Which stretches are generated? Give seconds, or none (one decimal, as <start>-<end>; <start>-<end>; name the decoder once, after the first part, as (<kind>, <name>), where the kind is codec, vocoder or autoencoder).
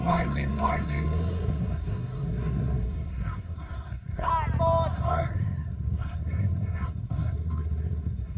0.0-4.3 (codec, SNAC); 4.9-8.4